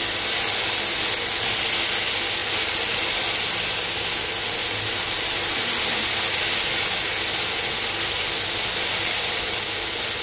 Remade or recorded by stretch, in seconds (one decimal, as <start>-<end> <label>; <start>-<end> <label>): 0.0-2.4 recorded; 2.4-3.6 remade; 3.6-4.6 recorded; 4.6-5.9 remade; 5.9-10.2 recorded